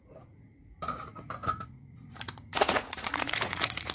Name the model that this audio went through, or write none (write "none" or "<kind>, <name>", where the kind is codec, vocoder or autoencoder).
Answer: vocoder, Vocos